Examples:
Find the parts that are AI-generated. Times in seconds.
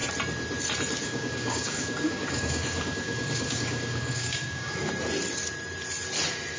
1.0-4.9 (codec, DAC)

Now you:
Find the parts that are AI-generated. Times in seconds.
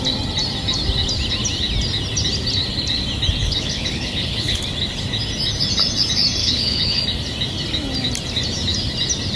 3.4-4.6 (codec, HILCodec); 6.4-7.0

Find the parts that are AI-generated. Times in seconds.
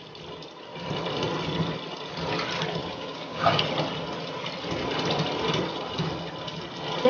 2.8-3.6 (codec, DAC)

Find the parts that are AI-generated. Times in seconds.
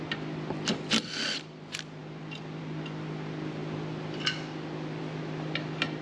none